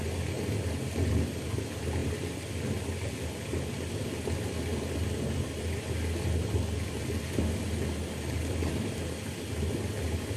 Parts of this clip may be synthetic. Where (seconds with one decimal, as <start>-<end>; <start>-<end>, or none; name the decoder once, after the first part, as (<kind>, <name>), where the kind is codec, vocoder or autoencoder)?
none